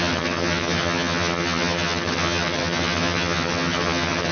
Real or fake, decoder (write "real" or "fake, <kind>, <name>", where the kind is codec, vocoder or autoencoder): fake, vocoder, HiFi-GAN